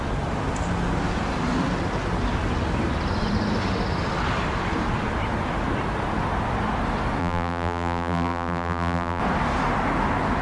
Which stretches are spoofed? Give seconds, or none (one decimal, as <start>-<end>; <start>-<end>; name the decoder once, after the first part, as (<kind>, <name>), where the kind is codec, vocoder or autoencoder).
7.2-9.2 (vocoder, BigVGAN v2)